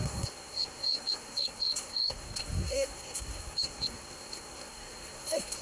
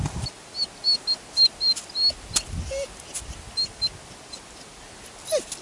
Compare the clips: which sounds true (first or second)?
second